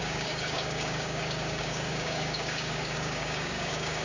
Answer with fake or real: fake